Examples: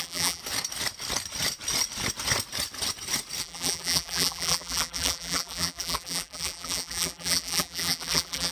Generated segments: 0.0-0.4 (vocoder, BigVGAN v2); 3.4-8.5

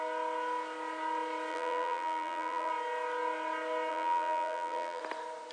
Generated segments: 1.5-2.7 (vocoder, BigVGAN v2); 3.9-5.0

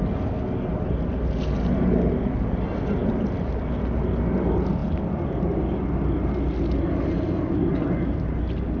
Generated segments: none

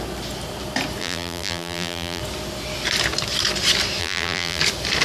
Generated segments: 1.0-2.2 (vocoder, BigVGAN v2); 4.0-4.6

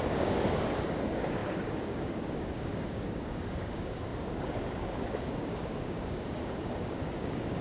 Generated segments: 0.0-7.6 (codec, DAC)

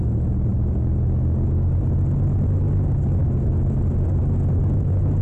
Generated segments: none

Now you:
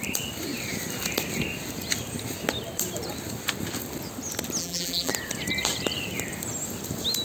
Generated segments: 4.6-5.1 (vocoder, BigVGAN v2)

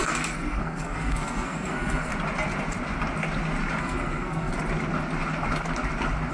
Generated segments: 0.0-2.1 (codec, SNAC); 3.8-4.5